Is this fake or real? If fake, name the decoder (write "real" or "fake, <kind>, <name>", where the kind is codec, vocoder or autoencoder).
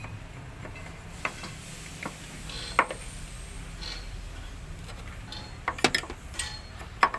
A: real